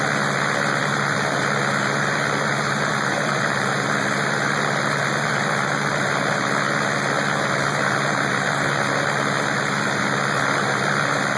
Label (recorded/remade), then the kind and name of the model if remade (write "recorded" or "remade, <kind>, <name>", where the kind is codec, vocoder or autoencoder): remade, vocoder, BigVGAN v2